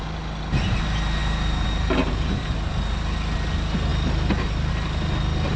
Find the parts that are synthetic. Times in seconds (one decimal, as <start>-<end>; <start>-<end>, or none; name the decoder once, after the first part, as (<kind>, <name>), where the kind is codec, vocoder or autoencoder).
none